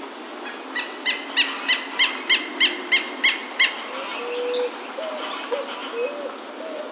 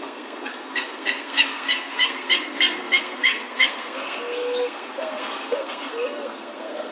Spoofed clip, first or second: second